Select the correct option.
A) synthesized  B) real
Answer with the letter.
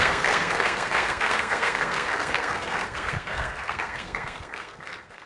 A